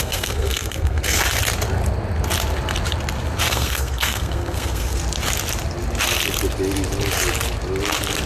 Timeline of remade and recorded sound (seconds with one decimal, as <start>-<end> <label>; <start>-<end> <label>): 0.0-1.2 remade; 1.2-3.5 recorded; 3.5-5.0 remade; 5.0-8.3 recorded